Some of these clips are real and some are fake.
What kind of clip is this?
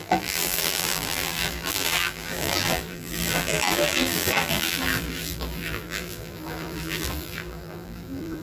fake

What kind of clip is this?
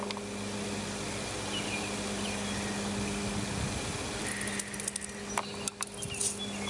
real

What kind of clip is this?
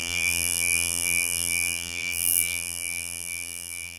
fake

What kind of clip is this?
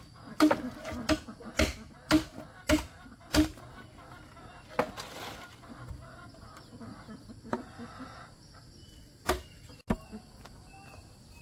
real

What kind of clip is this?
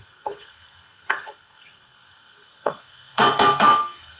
fake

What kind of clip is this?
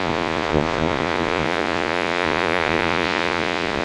fake